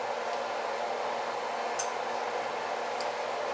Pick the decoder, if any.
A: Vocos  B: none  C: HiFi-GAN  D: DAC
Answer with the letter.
B